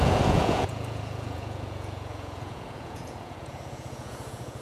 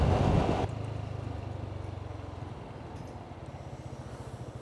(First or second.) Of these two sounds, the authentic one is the second